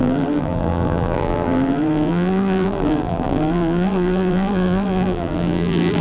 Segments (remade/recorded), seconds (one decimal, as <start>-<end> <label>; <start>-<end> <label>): 0.0-6.0 remade